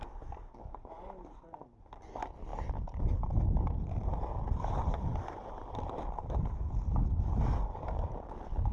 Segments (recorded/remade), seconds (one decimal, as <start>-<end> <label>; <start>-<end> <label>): 0.0-8.7 recorded